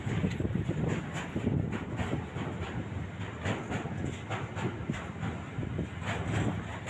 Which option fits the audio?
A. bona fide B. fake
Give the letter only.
A